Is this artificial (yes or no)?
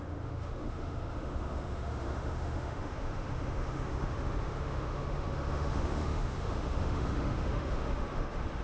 yes